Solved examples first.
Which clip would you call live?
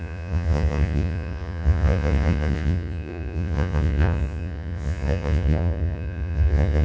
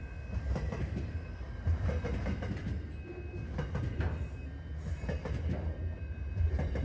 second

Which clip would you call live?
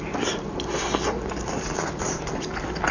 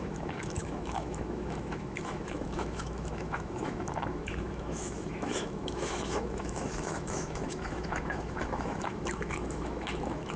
first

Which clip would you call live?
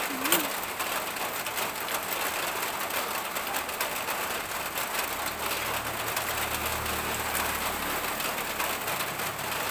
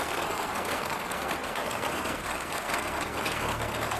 first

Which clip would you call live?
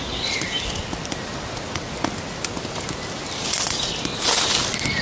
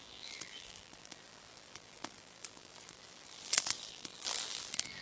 first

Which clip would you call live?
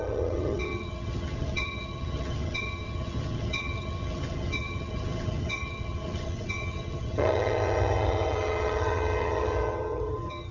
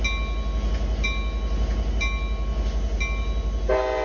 second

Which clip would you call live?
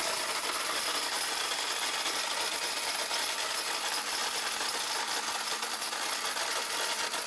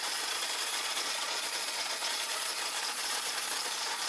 first